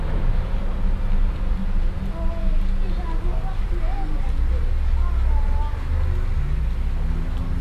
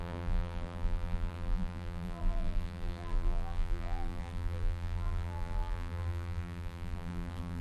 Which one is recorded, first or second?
first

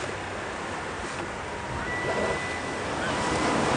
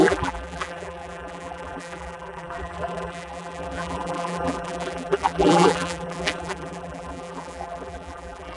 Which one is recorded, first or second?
first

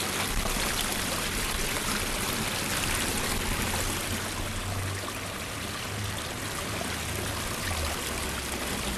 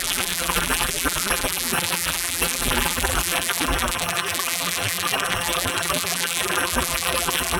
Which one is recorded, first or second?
first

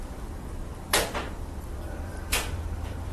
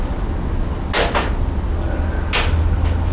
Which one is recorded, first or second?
second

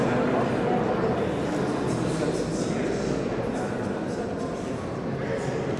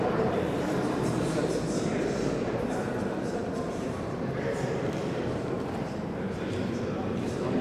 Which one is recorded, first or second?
first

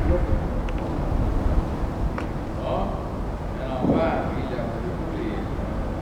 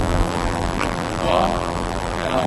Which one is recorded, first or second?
first